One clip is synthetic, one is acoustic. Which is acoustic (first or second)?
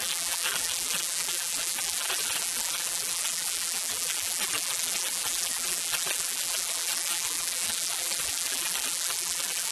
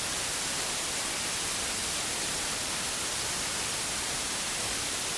second